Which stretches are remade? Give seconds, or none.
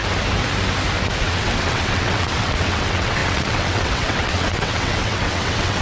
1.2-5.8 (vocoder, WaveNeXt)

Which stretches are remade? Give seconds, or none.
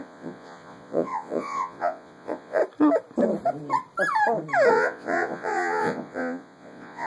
0.0-2.6 (vocoder, Vocos); 4.7-7.1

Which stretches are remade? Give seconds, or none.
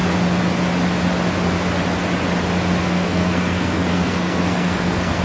2.8-5.2 (codec, SNAC)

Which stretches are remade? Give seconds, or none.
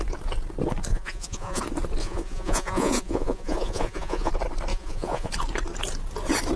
0.9-1.6 (vocoder, Vocos); 2.0-4.3; 4.7-5.3